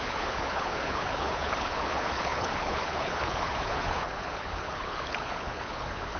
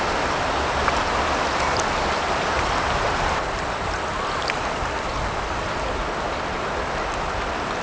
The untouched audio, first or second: second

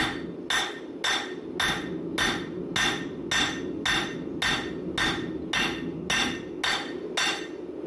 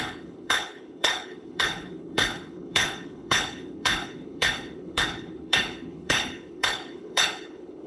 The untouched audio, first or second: first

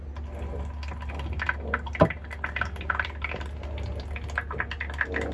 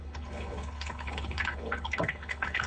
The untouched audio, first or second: first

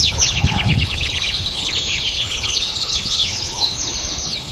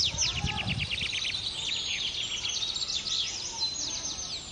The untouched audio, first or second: second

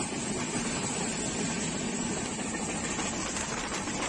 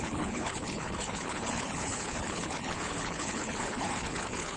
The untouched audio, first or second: first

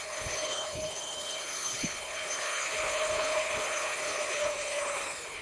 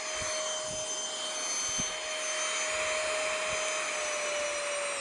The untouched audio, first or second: second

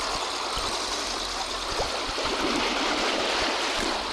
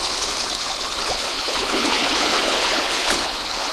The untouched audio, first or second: first